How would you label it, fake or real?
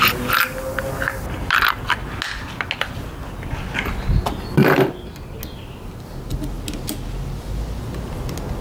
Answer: real